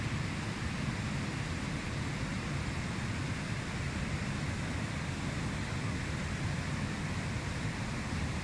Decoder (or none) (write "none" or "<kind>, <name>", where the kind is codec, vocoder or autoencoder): none